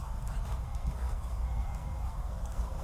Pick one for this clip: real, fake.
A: fake